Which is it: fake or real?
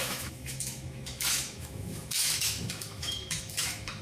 fake